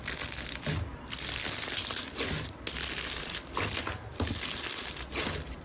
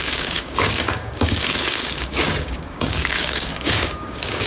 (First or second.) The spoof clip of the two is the second